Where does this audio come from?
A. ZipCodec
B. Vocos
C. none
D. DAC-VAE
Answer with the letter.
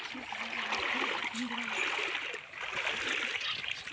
C